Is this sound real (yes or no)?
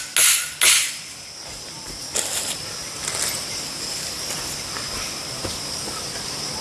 yes